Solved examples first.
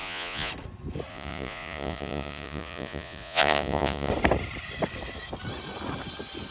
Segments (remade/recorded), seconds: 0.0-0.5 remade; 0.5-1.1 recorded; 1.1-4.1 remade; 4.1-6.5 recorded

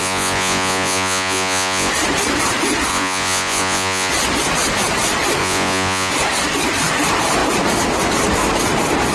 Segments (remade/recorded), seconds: 0.0-1.9 remade; 1.9-2.9 recorded; 2.9-4.1 remade; 4.1-5.4 recorded; 5.4-6.1 remade; 6.1-9.1 recorded

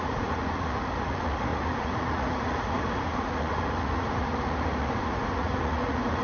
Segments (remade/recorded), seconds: 0.0-6.2 remade

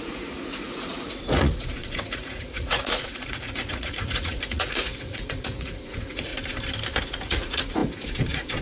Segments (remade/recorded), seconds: 0.0-6.3 remade; 6.3-7.0 recorded; 7.0-8.6 remade

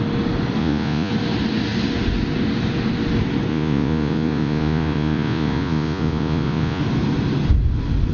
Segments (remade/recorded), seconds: 0.0-0.6 recorded; 0.6-1.1 remade; 1.1-3.5 recorded; 3.5-6.8 remade; 6.8-8.1 recorded